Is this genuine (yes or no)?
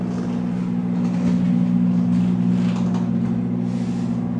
yes